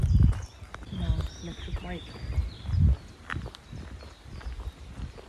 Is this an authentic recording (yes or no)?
yes